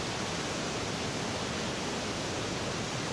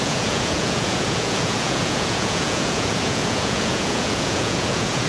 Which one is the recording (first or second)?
first